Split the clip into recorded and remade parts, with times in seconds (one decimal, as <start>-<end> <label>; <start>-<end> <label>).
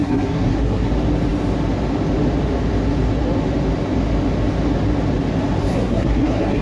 0.0-0.9 remade; 0.9-5.6 recorded; 5.6-6.6 remade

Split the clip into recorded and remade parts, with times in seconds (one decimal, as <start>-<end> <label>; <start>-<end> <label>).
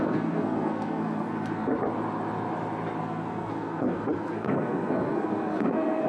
0.0-1.7 remade; 1.7-3.0 recorded; 3.0-6.1 remade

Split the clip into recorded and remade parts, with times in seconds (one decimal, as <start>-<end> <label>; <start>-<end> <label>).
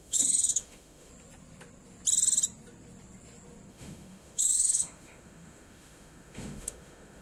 0.0-1.1 remade; 1.1-3.7 recorded; 3.7-7.2 remade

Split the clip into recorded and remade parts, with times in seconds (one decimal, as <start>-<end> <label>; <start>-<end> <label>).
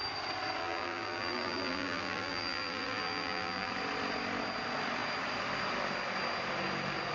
0.0-0.6 recorded; 0.6-3.7 remade; 3.7-7.1 recorded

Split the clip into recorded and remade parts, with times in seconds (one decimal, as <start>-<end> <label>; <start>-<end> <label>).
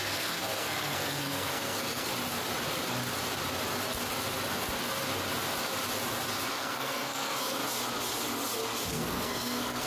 0.0-2.1 remade; 2.1-6.5 recorded; 6.5-7.6 remade; 7.6-8.9 recorded; 8.9-9.9 remade